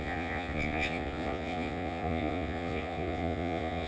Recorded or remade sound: remade